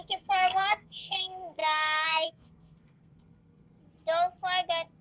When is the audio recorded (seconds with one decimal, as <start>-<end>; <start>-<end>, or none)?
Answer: 3.8-5.0